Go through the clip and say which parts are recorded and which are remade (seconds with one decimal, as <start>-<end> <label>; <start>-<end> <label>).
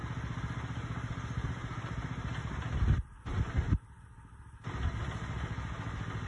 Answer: 0.0-6.3 recorded